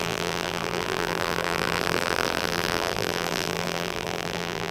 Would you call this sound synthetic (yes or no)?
yes